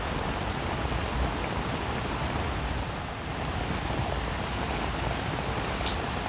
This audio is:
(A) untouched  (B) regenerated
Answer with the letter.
A